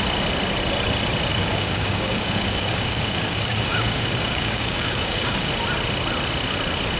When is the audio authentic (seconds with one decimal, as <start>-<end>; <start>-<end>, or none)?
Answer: 0.0-1.3; 5.5-7.0